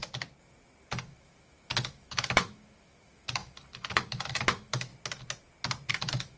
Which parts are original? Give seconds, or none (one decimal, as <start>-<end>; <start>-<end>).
0.0-0.9; 4.9-5.9